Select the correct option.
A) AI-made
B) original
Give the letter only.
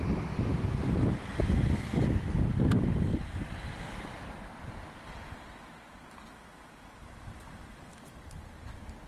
B